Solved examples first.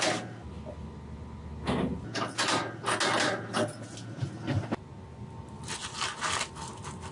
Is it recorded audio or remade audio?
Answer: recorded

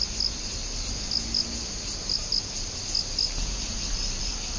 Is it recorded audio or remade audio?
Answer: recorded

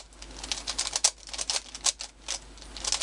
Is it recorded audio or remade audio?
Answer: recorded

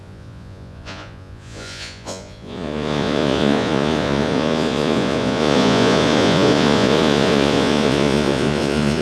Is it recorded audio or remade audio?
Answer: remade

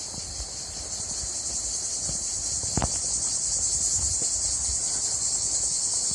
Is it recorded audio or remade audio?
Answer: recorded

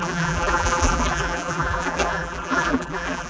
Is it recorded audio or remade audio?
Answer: remade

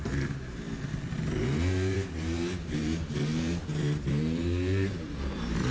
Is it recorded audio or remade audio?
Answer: remade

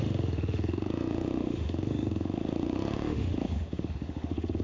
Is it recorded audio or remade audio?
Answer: remade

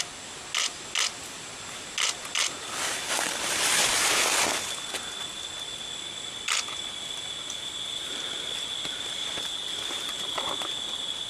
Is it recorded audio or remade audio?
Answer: recorded